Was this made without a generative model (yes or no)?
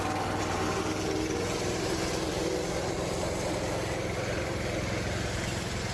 yes